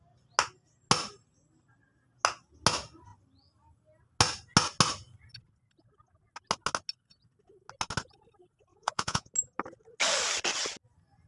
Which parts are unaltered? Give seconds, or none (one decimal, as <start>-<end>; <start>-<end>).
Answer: 0.0-8.7; 9.3-11.3